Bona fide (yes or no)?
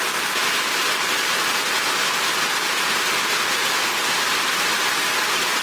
yes